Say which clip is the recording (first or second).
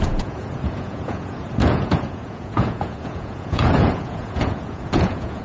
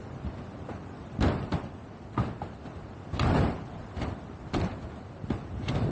second